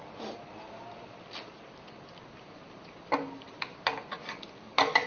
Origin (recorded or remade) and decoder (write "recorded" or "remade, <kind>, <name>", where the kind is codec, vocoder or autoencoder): recorded